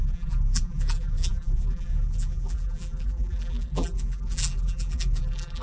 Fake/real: fake